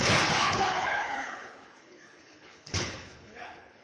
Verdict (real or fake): fake